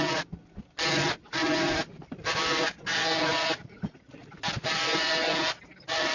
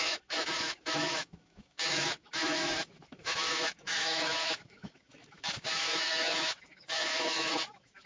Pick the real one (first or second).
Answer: first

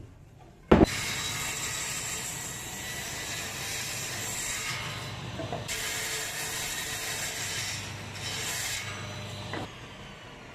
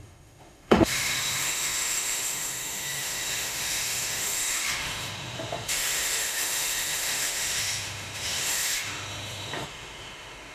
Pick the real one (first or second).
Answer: first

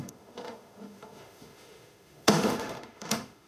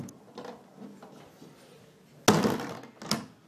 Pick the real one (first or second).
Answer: second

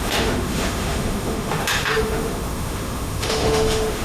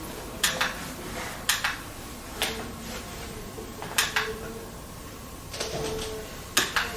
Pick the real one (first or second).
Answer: second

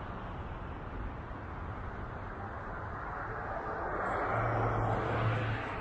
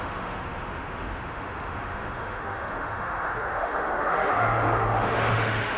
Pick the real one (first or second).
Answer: first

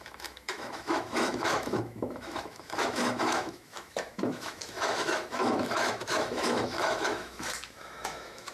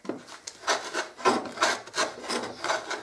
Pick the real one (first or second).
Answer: second